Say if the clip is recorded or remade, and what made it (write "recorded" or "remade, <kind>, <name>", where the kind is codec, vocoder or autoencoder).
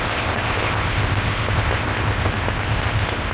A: remade, codec, ZipCodec